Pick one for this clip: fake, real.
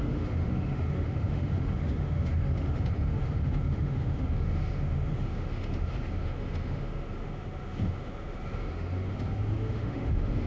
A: fake